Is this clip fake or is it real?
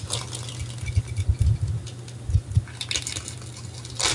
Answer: real